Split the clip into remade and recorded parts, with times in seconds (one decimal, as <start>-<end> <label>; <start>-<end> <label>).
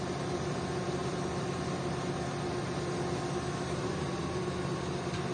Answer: 0.0-5.3 recorded